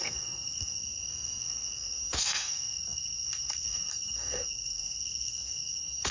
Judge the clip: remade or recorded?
remade